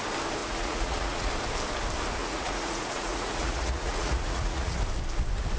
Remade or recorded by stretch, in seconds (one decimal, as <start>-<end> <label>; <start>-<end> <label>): 0.0-0.4 recorded; 0.4-1.3 remade; 1.3-2.2 recorded; 2.2-4.8 remade; 4.8-5.6 recorded